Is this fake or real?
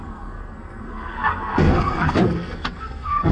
fake